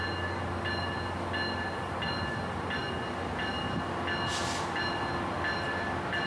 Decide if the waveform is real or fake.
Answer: real